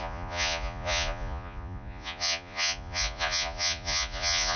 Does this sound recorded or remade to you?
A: remade